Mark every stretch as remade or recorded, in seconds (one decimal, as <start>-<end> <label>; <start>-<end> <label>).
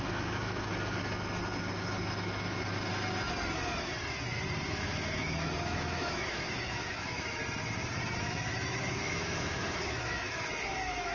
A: 0.0-0.7 remade; 0.7-4.7 recorded; 4.7-7.4 remade; 7.4-8.2 recorded; 8.2-11.1 remade